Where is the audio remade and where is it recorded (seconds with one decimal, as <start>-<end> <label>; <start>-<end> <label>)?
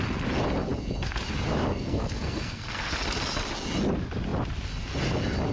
0.0-1.7 recorded; 1.7-2.9 remade; 2.9-5.5 recorded